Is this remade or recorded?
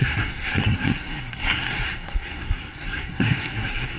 remade